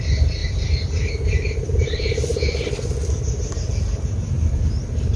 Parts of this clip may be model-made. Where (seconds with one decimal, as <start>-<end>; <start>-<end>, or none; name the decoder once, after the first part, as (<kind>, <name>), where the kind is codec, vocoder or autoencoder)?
0.0-2.3 (vocoder, BigVGAN v2); 3.5-5.2